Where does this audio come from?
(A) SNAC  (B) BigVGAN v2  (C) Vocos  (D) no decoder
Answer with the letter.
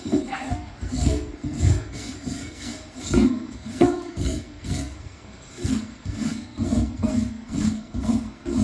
A